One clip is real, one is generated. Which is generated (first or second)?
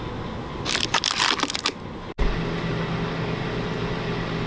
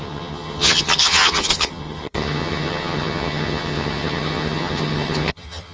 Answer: second